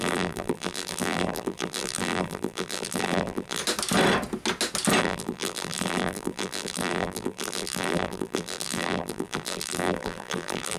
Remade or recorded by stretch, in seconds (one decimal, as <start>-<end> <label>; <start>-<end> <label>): 0.0-3.6 remade; 3.6-5.0 recorded; 5.0-10.8 remade